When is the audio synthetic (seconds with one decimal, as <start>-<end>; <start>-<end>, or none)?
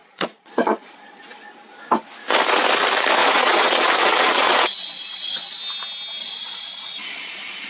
0.0-1.2; 3.2-5.6; 6.2-7.3